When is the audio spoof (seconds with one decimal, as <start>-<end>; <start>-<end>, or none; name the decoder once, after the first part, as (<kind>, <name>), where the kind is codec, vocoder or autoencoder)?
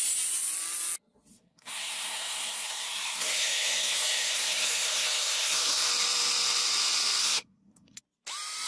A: 1.3-5.9 (codec, SNAC); 7.2-8.0